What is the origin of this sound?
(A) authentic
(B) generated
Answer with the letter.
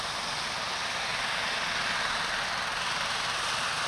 A